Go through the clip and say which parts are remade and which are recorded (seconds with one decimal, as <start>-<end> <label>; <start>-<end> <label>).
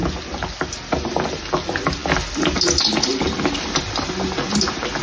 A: 0.0-5.0 recorded